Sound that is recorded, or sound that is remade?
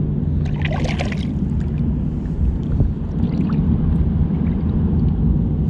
recorded